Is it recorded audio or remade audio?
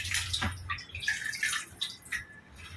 recorded